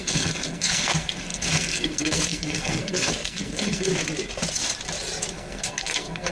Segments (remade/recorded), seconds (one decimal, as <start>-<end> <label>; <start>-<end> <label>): 0.0-3.9 remade; 3.9-5.3 recorded; 5.3-6.3 remade